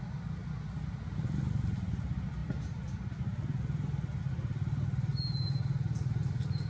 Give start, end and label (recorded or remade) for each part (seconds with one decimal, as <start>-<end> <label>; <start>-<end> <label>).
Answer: 0.0-6.7 recorded